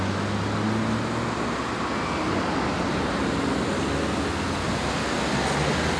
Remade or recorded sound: recorded